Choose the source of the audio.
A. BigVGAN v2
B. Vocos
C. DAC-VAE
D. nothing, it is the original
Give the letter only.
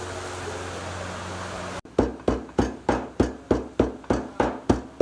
D